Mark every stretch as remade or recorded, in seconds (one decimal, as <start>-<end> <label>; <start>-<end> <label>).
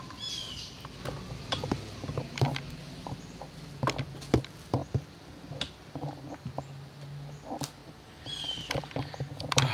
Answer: 0.0-7.8 recorded; 7.8-9.1 remade; 9.1-9.7 recorded